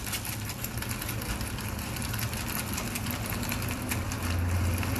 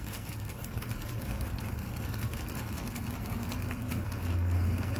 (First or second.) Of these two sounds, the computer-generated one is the second